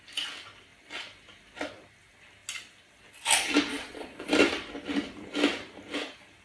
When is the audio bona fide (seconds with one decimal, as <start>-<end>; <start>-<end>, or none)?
0.0-3.7; 4.3-6.4

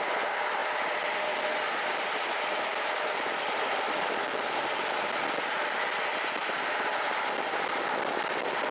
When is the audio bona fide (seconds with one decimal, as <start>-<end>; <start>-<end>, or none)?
0.0-8.7

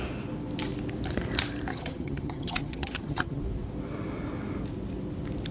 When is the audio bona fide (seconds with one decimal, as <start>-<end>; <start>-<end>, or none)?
0.0-1.7; 3.4-5.5

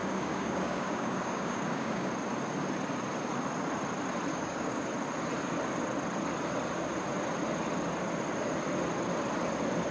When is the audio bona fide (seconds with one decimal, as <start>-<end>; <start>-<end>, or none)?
2.1-4.3; 4.8-9.9